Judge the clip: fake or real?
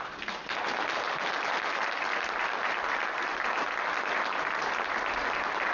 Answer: real